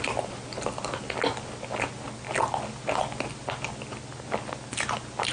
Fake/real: real